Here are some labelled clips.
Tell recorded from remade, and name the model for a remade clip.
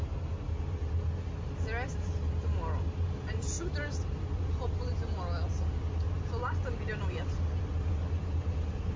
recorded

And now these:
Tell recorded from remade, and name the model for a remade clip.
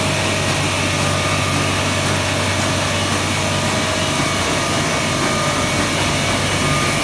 recorded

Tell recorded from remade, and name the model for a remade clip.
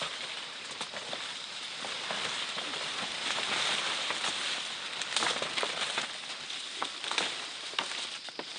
recorded